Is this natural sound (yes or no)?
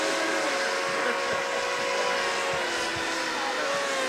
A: yes